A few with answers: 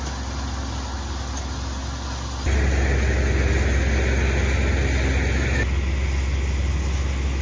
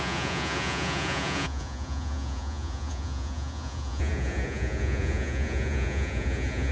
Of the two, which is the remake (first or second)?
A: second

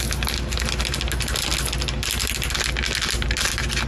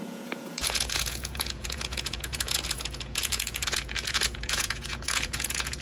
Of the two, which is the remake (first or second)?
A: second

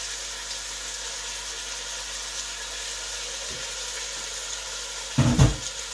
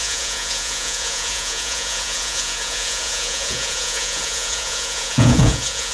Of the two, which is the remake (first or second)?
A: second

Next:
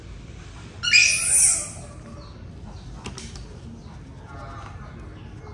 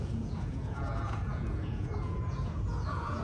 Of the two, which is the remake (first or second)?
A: second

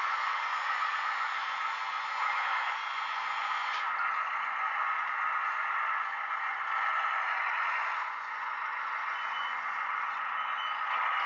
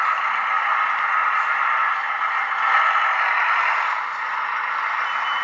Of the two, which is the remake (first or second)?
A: first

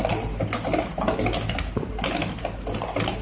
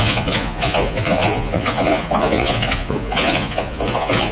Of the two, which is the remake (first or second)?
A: second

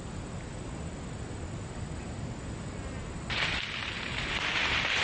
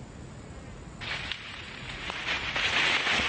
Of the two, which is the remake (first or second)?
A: second